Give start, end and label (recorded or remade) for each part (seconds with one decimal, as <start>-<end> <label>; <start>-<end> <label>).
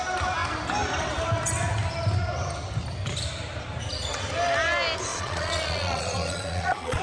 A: 0.0-5.1 recorded; 5.1-7.0 remade